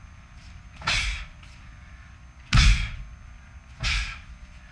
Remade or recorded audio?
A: recorded